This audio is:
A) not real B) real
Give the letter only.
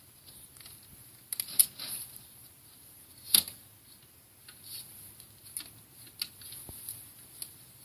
B